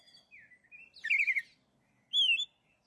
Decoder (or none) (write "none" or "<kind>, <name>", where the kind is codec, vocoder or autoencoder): none